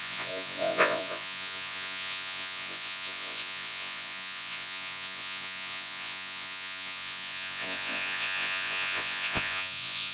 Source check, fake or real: fake